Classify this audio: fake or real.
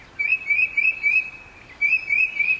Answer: real